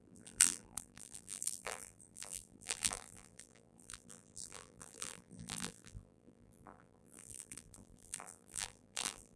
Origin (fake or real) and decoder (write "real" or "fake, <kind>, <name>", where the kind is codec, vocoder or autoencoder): fake, vocoder, BigVGAN v2